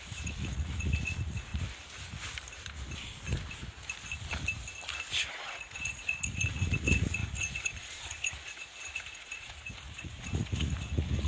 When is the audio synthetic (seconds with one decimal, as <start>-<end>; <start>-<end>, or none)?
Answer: 0.0-1.5; 5.3-11.3